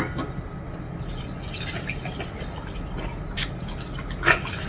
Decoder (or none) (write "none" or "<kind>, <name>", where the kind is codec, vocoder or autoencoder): none